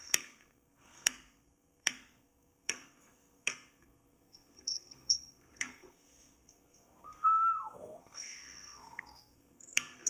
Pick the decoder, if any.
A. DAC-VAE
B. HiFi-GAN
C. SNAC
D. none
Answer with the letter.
C